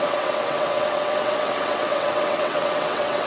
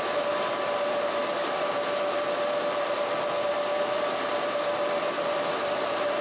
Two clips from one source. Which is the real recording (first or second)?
second